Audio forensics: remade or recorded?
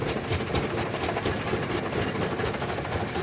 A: recorded